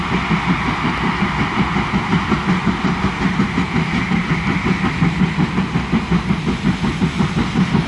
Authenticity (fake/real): real